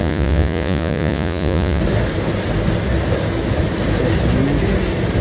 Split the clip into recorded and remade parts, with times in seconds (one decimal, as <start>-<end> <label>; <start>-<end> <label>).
0.0-1.8 remade; 1.8-5.2 recorded